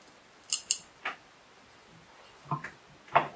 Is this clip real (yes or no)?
yes